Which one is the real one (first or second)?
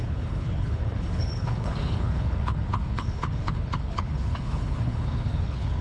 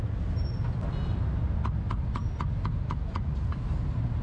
second